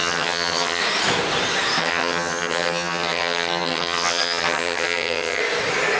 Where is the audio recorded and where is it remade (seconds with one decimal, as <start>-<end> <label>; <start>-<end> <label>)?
0.0-0.8 remade; 0.8-1.8 recorded; 1.8-5.4 remade; 5.4-6.0 recorded